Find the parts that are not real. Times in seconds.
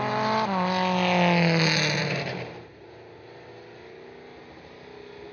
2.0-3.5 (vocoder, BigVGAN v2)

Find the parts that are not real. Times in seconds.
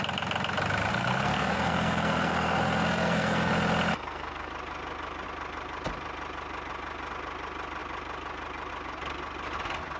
0.9-3.5 (codec, SNAC); 3.9-4.5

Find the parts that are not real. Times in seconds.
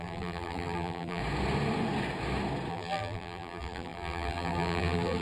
0.0-1.2 (vocoder, BigVGAN v2); 2.7-5.2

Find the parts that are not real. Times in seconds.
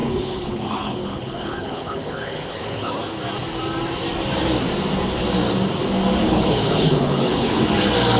0.0-3.0 (codec, HILCodec); 6.2-7.6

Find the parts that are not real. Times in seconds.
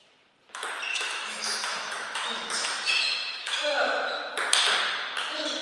0.9-4.3 (autoencoder, DAC-VAE)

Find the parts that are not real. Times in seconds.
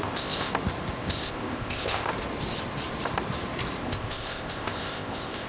0.0-0.5 (codec, ZipCodec); 1.0-2.1; 3.8-5.5